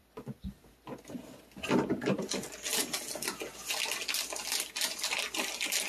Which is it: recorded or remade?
recorded